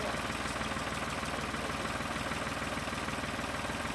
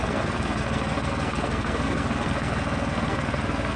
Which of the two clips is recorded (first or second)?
first